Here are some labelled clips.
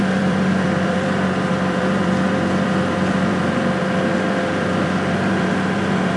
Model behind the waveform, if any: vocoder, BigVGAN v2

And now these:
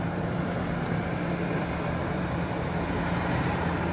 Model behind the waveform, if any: vocoder, BigVGAN v2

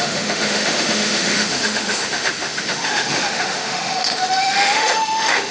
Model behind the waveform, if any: autoencoder, DAC-VAE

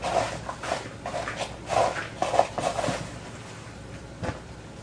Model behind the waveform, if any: none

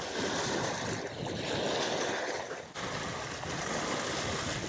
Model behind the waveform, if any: none